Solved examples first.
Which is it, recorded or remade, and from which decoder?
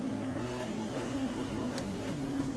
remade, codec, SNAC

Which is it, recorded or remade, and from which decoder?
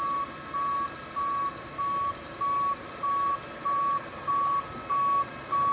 recorded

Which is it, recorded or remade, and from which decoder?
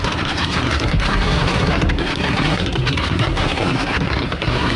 remade, codec, SNAC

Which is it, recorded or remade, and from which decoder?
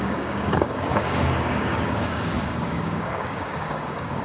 remade, codec, DAC